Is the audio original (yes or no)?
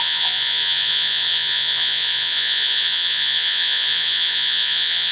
no